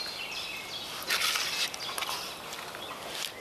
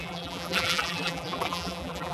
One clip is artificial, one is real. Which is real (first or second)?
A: first